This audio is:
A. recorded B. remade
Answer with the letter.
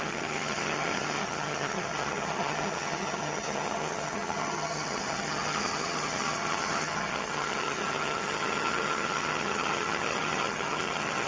B